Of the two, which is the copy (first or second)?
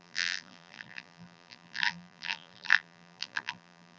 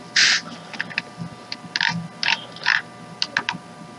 first